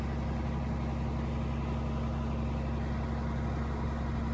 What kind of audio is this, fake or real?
real